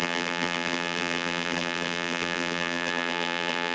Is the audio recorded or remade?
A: remade